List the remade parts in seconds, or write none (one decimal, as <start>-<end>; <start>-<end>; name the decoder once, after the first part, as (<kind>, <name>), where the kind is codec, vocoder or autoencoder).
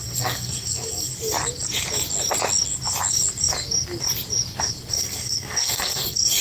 0.0-1.1 (codec, SNAC); 4.9-6.4